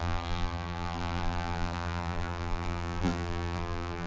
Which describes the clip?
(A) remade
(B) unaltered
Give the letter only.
A